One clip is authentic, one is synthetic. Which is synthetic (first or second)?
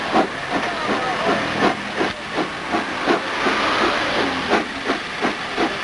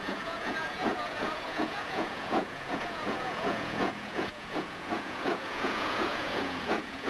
second